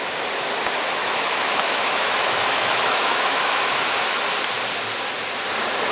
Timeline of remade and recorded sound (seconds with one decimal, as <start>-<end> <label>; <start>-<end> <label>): 0.0-1.0 recorded; 1.0-4.2 remade; 4.2-5.9 recorded